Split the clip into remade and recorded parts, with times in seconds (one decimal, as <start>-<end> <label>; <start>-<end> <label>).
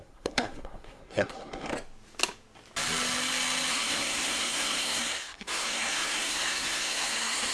0.0-1.7 remade; 1.7-3.7 recorded; 3.7-7.5 remade